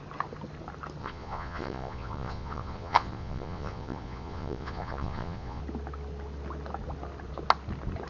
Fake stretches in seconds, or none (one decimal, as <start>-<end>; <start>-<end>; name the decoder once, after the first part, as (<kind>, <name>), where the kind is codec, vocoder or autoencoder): 1.0-5.6 (vocoder, Vocos)